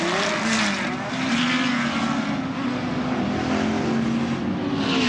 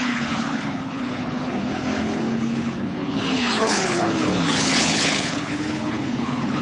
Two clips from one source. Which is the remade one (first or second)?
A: second